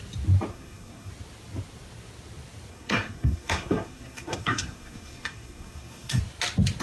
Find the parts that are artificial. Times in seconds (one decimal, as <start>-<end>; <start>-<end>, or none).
0.5-1.1; 2.7-6.2